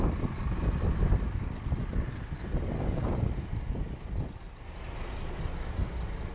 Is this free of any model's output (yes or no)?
yes